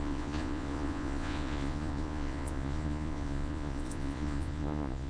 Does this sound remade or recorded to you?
remade